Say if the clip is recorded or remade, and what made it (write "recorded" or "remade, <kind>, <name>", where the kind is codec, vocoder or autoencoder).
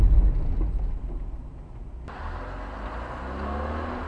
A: recorded